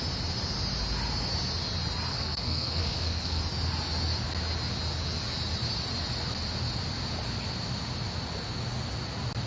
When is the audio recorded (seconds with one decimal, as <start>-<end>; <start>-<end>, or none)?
0.0-2.1; 3.4-9.5